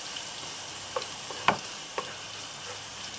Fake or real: fake